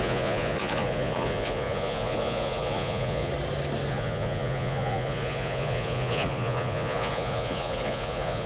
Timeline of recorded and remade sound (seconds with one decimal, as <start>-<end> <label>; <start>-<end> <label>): 0.0-3.3 remade; 3.3-3.9 recorded; 3.9-8.5 remade